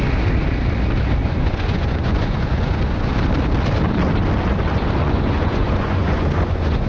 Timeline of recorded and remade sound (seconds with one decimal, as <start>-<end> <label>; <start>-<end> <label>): 0.0-1.2 recorded; 1.2-3.1 remade; 3.1-5.0 recorded; 5.0-6.9 remade